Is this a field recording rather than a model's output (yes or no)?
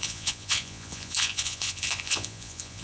no